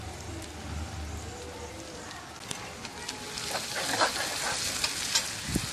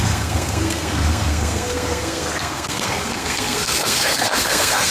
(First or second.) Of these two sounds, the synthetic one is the second